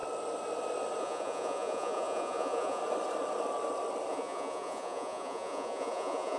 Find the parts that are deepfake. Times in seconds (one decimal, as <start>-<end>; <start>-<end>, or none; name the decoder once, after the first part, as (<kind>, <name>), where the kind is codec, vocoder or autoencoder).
1.0-2.8 (vocoder, Vocos); 4.1-6.4